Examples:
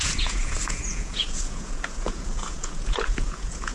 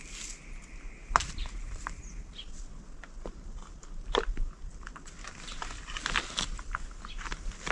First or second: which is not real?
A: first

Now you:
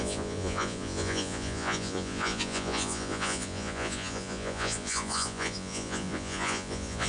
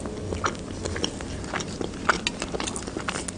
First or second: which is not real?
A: first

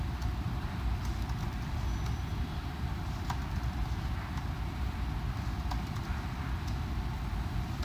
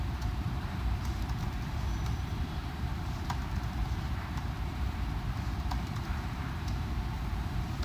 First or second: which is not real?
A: second